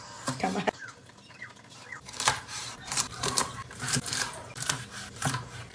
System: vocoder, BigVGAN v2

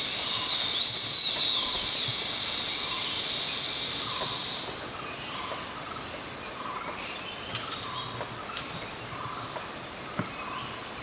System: none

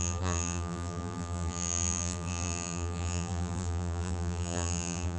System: vocoder, BigVGAN v2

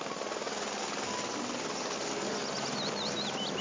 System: none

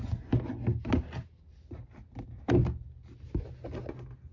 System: none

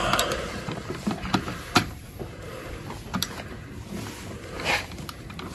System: vocoder, BigVGAN v2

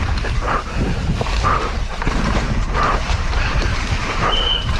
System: vocoder, BigVGAN v2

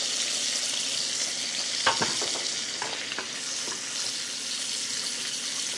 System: none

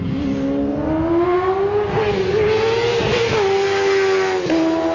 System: none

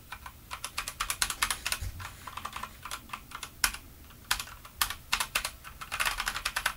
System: none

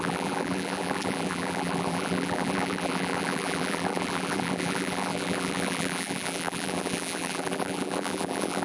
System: vocoder, BigVGAN v2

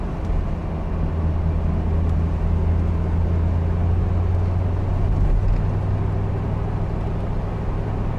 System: none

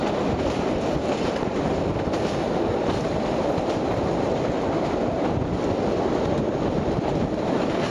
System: vocoder, BigVGAN v2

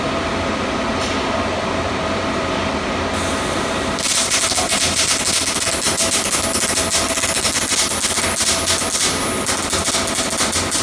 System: none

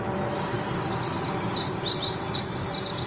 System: none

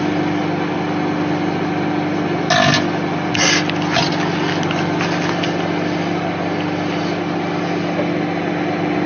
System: none